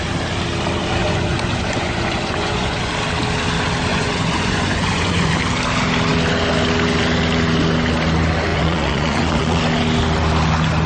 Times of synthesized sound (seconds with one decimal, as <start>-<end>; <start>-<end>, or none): 1.0-2.9; 3.9-5.3; 8.5-9.6